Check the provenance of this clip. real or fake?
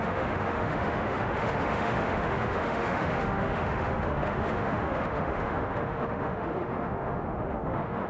fake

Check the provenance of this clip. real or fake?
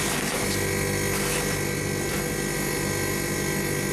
real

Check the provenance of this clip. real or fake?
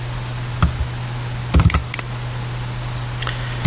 real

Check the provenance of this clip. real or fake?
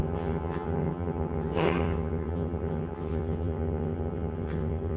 fake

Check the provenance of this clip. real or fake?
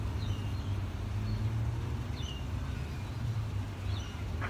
real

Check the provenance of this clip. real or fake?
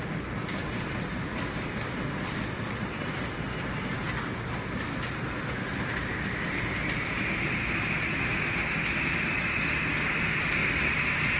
real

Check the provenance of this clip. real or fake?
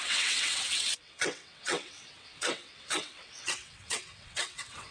fake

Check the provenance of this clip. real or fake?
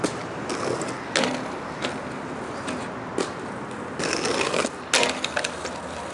real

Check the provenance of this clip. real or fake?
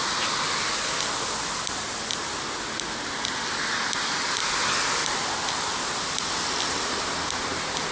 real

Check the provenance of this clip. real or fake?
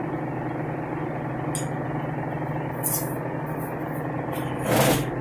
real